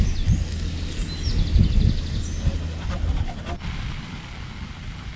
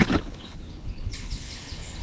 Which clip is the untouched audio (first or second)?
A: first